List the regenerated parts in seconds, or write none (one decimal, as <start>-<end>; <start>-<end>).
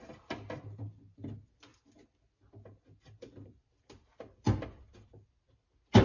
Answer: none